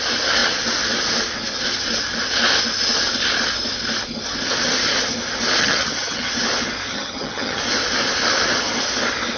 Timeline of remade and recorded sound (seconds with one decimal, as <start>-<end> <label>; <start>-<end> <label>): 0.0-5.6 recorded; 5.6-6.3 remade; 6.3-6.9 recorded; 6.9-7.6 remade; 7.6-9.4 recorded